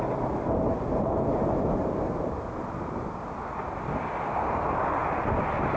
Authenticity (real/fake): real